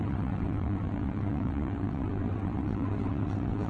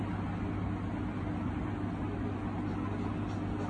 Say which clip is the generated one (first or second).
first